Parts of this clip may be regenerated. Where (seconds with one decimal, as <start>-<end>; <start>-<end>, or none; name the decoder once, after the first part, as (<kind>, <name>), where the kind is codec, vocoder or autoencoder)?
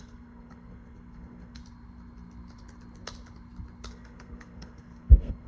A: 0.0-1.6 (codec, SNAC); 3.9-5.5